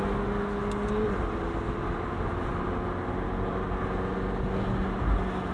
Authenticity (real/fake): real